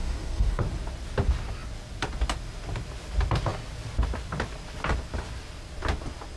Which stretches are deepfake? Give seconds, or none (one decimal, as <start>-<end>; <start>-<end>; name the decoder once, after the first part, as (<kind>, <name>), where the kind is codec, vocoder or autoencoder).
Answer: 0.0-0.6 (codec, DAC)